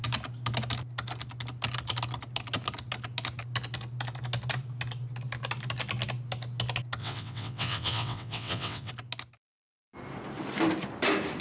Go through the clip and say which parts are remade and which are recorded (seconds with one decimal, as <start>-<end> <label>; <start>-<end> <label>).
0.0-7.0 recorded; 7.0-8.9 remade; 8.9-11.4 recorded